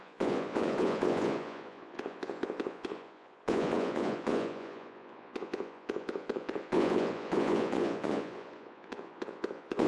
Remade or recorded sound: remade